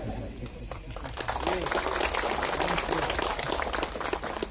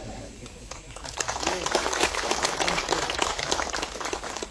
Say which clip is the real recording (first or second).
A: first